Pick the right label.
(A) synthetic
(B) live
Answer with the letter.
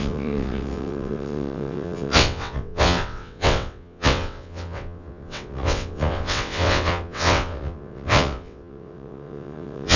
A